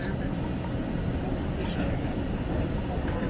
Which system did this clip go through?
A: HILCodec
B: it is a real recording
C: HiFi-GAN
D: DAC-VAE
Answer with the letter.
B